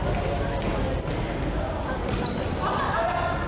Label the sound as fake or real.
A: real